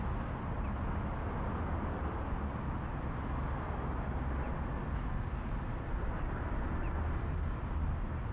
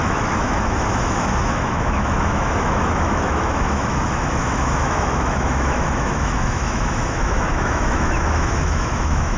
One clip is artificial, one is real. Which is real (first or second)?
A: first